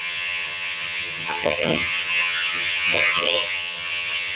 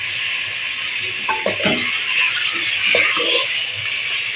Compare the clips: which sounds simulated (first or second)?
first